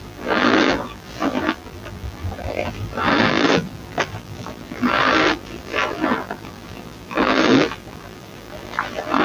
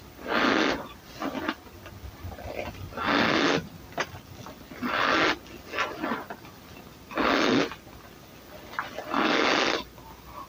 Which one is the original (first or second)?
second